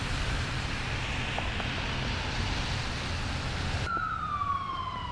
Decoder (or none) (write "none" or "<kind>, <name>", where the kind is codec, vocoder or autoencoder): none